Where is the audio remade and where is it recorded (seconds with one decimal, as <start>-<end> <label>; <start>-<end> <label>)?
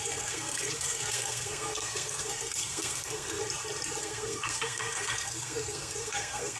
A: 0.0-3.4 remade; 3.4-4.0 recorded; 4.0-6.6 remade